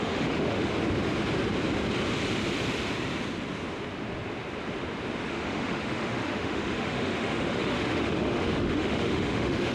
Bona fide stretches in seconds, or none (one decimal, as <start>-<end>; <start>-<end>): 0.7-5.3